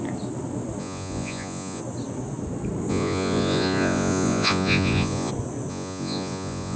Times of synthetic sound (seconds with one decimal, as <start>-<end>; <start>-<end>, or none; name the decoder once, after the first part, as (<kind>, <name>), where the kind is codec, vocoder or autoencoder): 0.8-1.8 (vocoder, Vocos); 2.9-5.3; 5.7-6.8